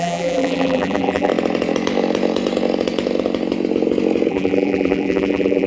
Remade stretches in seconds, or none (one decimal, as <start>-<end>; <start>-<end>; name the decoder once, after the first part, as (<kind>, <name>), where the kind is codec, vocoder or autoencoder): 0.0-1.3 (vocoder, BigVGAN v2); 4.3-5.7